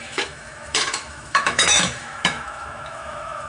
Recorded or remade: remade